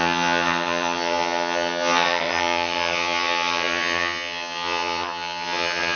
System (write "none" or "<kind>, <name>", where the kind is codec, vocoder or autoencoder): vocoder, HiFi-GAN